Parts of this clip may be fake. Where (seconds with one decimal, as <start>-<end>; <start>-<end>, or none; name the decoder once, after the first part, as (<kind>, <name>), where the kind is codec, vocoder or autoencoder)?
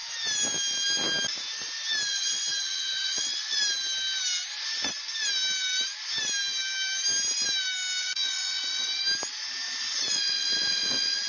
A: 2.1-3.6 (vocoder, Vocos); 8.0-9.0; 9.8-11.3